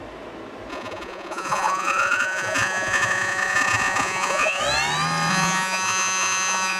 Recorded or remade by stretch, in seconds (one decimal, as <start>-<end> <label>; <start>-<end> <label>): 0.0-0.7 recorded; 0.7-4.6 remade; 4.6-5.3 recorded; 5.3-6.8 remade